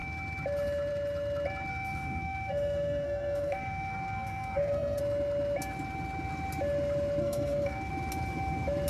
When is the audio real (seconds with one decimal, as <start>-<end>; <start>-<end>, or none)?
0.0-1.7; 5.0-7.2; 7.9-8.9